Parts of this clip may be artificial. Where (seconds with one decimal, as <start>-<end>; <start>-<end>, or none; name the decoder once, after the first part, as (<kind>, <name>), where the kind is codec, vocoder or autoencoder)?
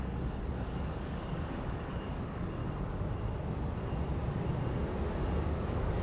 0.0-2.6 (codec, DAC); 5.4-6.0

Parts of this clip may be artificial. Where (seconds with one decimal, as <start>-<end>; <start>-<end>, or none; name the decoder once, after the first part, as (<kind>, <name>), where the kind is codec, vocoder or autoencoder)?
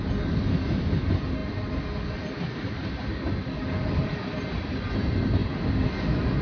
none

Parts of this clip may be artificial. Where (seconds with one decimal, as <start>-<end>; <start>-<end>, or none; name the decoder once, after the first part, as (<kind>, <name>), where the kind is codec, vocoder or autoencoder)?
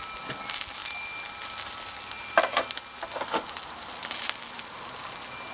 none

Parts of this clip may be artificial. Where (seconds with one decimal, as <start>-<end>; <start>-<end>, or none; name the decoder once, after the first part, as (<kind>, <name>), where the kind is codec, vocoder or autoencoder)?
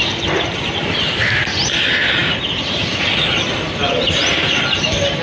none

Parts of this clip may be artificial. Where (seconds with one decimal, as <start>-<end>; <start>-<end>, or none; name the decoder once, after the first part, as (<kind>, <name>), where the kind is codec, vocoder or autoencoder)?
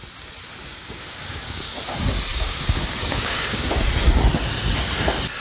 0.7-1.7 (codec, DAC); 2.3-3.8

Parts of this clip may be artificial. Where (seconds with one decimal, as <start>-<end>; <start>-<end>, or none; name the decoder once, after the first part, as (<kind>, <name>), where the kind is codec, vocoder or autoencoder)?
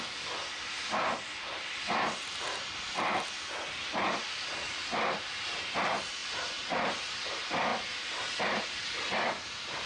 none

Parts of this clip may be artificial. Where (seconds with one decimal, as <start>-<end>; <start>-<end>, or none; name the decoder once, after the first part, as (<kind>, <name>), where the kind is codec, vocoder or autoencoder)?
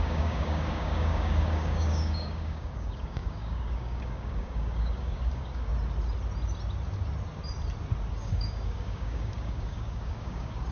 0.0-5.7 (codec, DAC); 8.1-10.7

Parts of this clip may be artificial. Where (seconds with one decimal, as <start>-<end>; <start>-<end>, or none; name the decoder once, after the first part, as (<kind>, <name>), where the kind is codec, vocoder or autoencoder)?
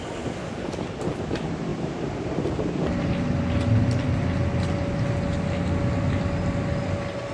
0.4-1.2 (codec, DAC)